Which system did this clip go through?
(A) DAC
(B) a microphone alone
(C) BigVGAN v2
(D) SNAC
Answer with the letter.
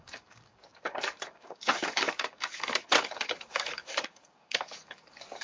A